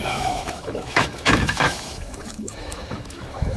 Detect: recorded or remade remade